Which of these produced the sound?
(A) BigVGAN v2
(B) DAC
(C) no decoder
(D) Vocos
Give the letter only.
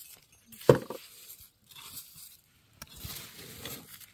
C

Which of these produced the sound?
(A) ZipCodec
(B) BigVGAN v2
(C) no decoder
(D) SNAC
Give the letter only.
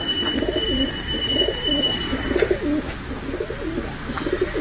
C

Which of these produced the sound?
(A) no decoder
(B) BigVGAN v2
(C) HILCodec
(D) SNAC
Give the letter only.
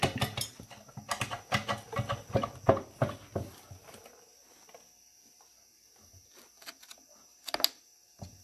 A